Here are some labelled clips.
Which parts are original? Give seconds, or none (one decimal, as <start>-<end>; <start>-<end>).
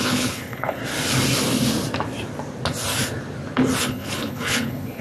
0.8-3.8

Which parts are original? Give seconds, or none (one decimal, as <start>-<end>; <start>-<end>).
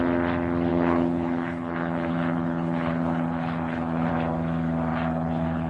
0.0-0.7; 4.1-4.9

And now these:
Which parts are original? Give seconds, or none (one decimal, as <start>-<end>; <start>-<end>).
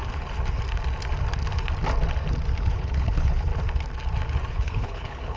0.0-2.6; 3.5-4.5